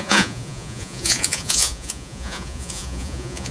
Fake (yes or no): yes